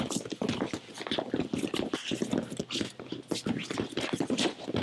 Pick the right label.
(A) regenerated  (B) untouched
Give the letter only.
B